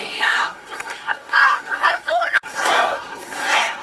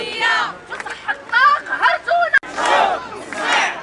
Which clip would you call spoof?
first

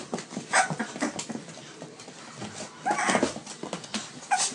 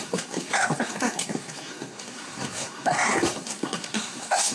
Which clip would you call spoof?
second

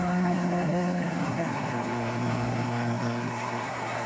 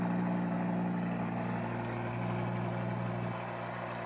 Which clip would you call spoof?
first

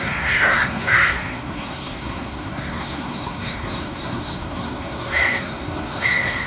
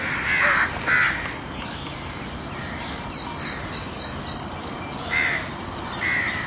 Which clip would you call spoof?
first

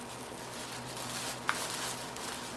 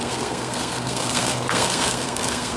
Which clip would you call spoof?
second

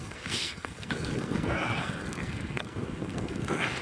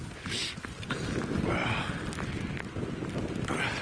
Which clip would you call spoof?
first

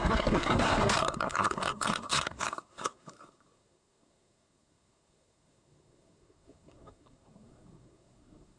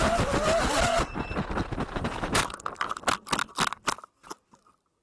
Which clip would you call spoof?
first